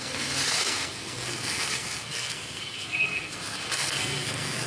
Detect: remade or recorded remade